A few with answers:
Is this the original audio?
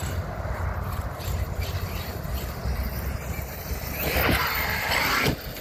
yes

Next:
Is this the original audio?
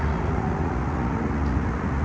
no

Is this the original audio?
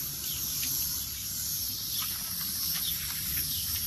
yes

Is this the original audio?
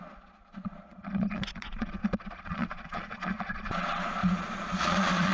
no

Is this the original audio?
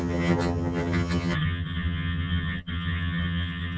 no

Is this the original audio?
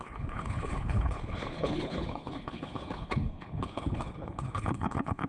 no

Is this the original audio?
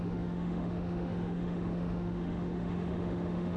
no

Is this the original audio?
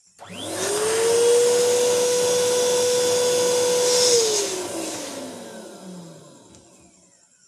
yes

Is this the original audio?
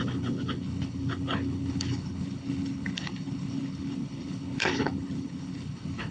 no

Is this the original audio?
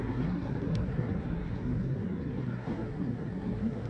no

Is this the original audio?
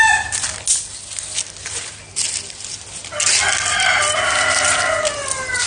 yes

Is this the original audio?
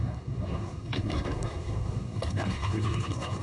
no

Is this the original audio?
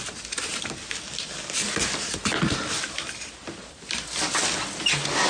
yes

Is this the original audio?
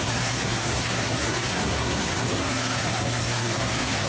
no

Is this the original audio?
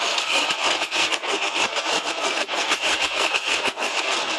no